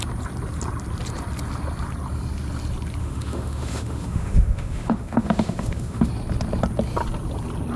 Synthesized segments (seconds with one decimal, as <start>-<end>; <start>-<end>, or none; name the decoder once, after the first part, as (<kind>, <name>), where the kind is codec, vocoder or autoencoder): 3.0-6.1 (autoencoder, DAC-VAE)